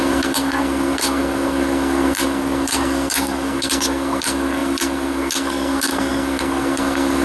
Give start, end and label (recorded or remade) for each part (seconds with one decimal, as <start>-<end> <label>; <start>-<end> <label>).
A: 0.0-7.2 remade